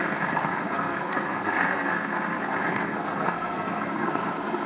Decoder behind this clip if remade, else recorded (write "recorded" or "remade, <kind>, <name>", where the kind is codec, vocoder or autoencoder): remade, codec, SNAC